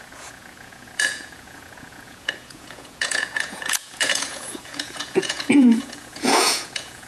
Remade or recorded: remade